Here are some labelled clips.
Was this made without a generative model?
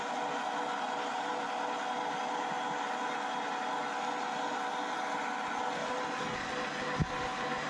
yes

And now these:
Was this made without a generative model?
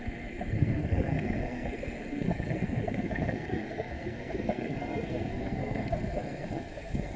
no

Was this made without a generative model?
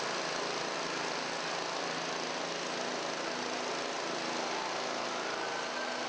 yes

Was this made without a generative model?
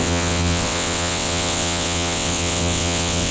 no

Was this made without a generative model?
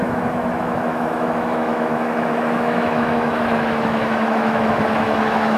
no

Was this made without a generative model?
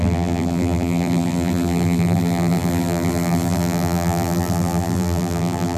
no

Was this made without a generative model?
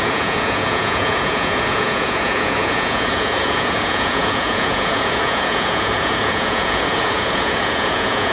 no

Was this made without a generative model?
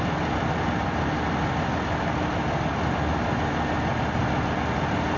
yes